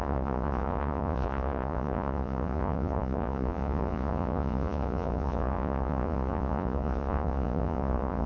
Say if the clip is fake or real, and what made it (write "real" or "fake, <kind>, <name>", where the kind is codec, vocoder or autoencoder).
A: fake, vocoder, Vocos